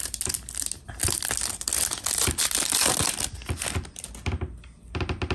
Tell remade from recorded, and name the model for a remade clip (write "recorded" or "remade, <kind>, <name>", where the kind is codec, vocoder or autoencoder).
recorded